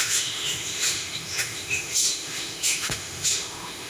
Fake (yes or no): yes